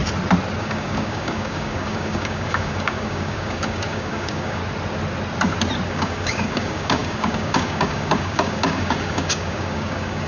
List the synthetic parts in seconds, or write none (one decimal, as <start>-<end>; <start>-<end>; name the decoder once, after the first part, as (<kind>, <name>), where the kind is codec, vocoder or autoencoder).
0.6-4.6 (codec, DAC); 5.9-10.3